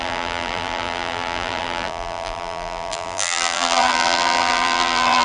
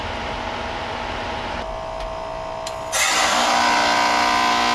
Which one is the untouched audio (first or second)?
second